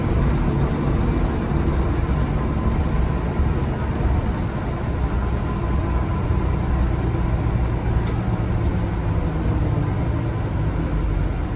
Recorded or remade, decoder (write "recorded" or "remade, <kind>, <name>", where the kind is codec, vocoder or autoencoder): recorded